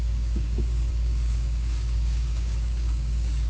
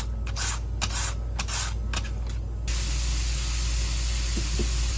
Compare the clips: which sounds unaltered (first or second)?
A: second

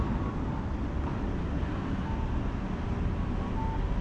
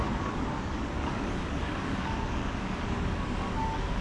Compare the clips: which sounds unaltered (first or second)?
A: first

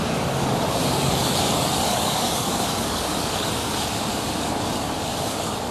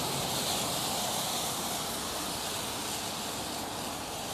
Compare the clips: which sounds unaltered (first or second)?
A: second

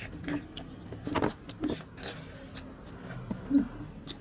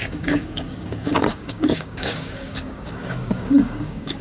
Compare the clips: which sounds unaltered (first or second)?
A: first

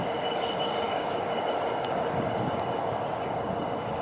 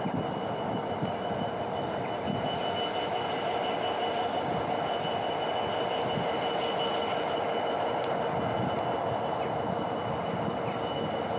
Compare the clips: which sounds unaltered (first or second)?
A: second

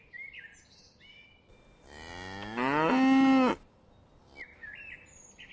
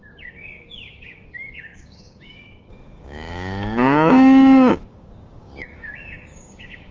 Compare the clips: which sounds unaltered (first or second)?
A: first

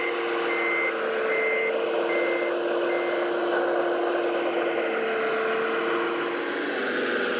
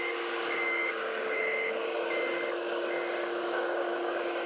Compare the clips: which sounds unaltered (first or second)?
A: first